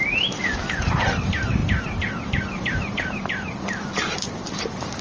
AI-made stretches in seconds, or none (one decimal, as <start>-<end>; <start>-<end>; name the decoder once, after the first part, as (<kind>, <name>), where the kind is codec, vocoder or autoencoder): 1.6-4.6 (vocoder, BigVGAN v2)